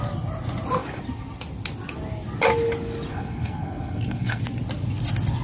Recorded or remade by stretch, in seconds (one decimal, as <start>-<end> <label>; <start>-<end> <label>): 0.0-3.1 recorded; 3.1-4.4 remade; 4.4-5.4 recorded